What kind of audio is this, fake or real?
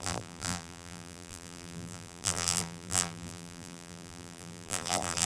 fake